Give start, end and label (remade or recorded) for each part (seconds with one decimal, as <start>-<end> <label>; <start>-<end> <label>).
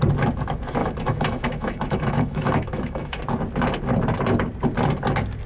0.0-0.8 recorded; 0.8-3.2 remade; 3.2-5.5 recorded